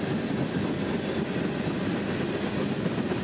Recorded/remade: recorded